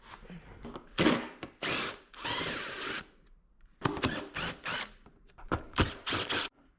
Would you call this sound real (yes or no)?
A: yes